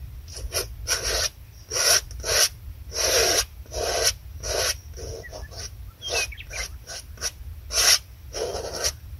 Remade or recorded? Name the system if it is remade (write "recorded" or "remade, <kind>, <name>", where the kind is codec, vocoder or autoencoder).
recorded